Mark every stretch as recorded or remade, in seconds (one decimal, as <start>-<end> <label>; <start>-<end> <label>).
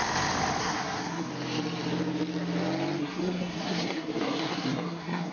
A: 0.0-0.6 recorded; 0.6-1.3 remade; 1.3-3.0 recorded; 3.0-5.3 remade